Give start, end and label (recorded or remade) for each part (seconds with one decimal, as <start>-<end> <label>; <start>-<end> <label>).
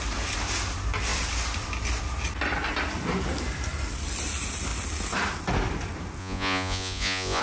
0.0-6.2 recorded; 6.2-7.4 remade